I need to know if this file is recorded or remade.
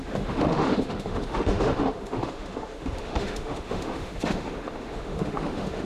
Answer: remade